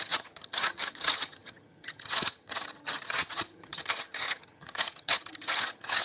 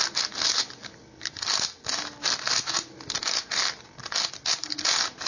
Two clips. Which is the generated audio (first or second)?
first